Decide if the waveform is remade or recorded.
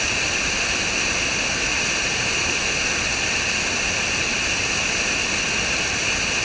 recorded